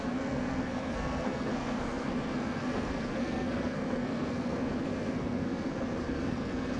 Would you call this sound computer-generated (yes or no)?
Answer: yes